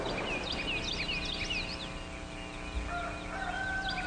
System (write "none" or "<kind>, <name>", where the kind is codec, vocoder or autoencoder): none